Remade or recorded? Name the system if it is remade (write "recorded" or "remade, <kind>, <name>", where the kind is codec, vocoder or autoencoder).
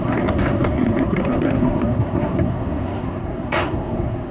remade, codec, SNAC